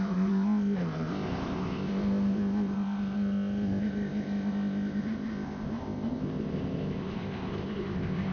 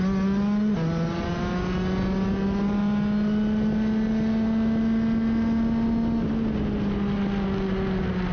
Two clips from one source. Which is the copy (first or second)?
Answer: first